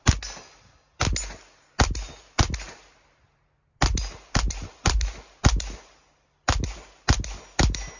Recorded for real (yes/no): yes